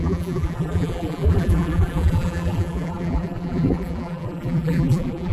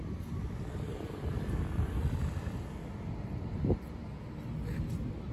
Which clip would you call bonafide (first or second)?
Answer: second